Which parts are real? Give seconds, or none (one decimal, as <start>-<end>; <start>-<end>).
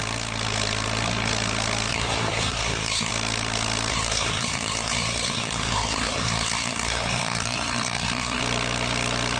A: 0.0-1.9; 3.1-3.9; 8.4-9.4